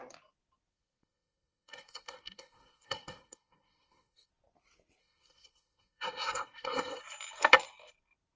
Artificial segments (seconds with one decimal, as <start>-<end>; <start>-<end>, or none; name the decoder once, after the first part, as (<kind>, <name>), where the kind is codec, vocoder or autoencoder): 0.7-4.3 (codec, SNAC); 5.0-7.0